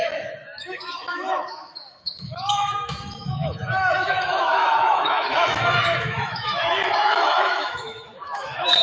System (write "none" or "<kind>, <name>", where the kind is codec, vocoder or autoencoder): autoencoder, DAC-VAE